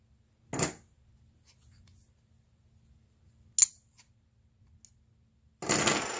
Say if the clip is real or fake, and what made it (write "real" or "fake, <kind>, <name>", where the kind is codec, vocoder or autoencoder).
real